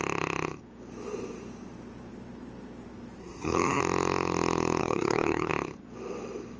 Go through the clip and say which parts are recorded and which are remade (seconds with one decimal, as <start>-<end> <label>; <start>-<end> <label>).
0.0-3.2 recorded; 3.2-3.8 remade; 3.8-4.8 recorded; 4.8-5.5 remade; 5.5-6.6 recorded